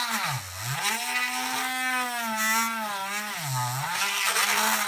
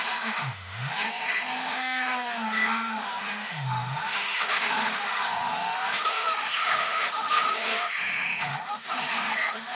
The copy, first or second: second